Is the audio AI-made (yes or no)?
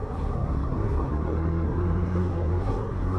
yes